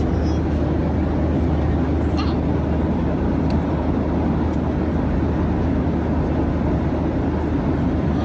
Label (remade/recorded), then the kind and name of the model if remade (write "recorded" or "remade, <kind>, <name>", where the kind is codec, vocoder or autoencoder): recorded